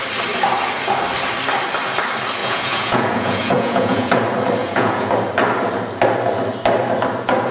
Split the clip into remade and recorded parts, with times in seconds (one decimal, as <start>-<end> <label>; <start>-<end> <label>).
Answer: 0.0-2.4 recorded; 2.4-4.1 remade; 4.1-4.6 recorded; 4.6-5.1 remade; 5.1-7.5 recorded